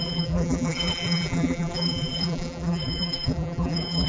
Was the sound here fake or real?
fake